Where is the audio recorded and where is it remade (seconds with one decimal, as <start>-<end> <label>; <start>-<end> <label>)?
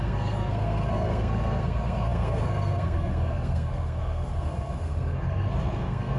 0.0-6.2 remade